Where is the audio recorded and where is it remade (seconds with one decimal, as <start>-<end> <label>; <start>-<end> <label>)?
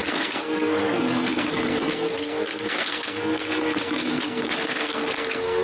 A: 0.0-5.6 remade